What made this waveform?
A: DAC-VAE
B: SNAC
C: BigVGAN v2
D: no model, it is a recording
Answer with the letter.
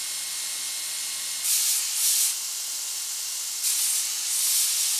D